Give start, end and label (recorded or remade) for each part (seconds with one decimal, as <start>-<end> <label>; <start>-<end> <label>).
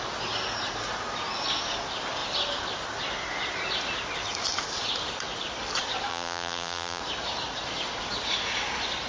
0.0-6.1 recorded; 6.1-7.0 remade; 7.0-9.1 recorded